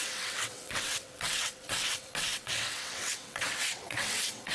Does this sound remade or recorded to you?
remade